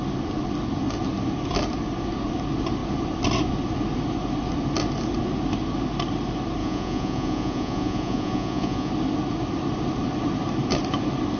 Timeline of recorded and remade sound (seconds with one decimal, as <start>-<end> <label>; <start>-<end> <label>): 0.0-6.6 recorded; 6.6-8.9 remade; 8.9-11.4 recorded